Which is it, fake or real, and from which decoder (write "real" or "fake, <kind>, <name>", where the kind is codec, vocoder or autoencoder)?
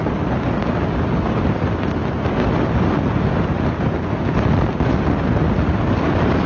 real